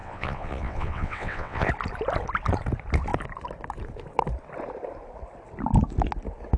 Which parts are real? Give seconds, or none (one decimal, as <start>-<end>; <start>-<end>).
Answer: 1.7-6.6